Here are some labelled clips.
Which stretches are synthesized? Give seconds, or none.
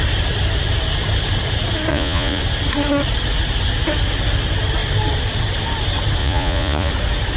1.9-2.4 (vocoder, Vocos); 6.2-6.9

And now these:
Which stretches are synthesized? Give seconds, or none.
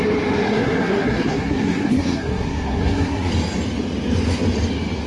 0.5-3.3 (codec, SNAC)